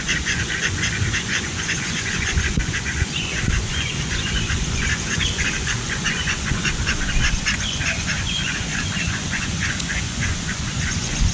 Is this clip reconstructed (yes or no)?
yes